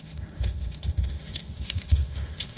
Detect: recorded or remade remade